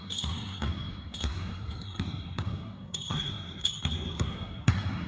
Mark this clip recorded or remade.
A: remade